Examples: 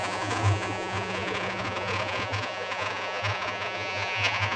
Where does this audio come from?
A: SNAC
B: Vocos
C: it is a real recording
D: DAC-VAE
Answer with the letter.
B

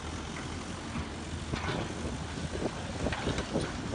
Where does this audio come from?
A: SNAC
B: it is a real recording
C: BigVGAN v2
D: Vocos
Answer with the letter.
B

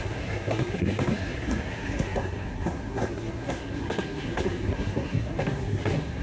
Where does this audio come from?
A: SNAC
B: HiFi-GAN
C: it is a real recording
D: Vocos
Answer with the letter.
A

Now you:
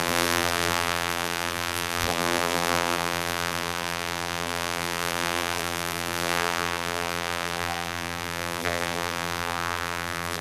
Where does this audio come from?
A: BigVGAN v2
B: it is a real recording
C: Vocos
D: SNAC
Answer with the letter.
A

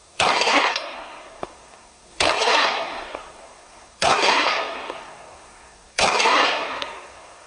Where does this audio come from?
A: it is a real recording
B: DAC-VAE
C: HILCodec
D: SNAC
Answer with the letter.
D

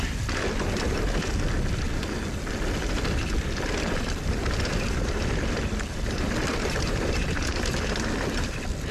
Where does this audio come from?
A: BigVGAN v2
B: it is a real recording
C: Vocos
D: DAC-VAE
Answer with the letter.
A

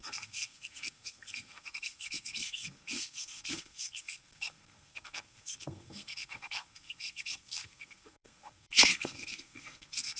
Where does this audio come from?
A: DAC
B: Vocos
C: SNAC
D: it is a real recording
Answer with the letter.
C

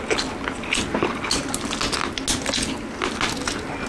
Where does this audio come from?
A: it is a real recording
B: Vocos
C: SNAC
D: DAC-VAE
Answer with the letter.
A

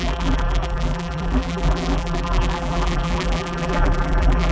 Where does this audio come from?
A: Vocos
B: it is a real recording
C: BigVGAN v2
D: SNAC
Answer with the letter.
C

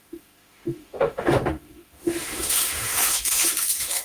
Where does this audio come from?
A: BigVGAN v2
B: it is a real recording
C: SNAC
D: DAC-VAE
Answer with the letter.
D